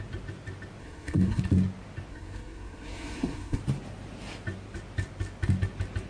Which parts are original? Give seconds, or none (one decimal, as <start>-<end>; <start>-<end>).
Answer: 0.0-0.8; 1.4-2.1; 3.6-6.1